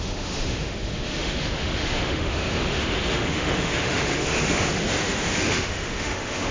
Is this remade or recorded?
remade